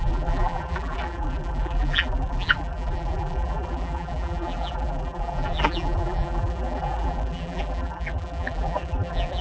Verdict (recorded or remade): remade